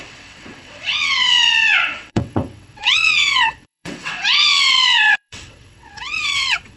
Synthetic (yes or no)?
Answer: yes